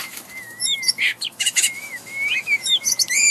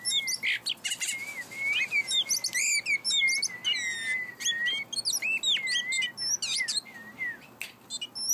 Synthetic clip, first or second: first